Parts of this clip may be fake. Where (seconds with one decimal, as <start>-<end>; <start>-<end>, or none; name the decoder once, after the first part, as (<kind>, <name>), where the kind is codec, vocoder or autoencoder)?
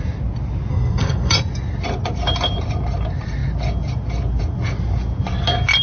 0.7-1.3 (codec, SNAC)